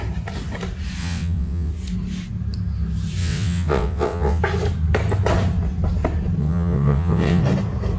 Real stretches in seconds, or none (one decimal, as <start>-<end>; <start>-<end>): 0.0-1.0; 1.7-3.2; 4.4-6.4; 7.4-8.0